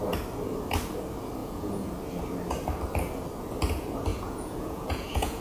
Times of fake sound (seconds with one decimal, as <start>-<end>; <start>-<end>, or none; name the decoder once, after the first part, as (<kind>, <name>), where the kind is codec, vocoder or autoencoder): 1.4-1.9 (vocoder, Vocos); 4.1-5.4